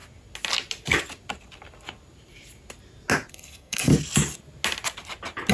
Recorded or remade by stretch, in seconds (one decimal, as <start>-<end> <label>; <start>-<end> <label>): 0.0-3.3 recorded; 3.3-3.9 remade; 3.9-5.5 recorded